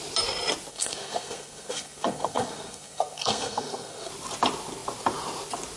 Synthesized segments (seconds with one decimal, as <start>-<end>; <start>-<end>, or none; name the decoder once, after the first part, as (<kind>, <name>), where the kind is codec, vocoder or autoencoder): 0.7-4.1 (codec, SNAC)